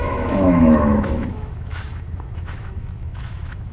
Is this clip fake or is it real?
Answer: fake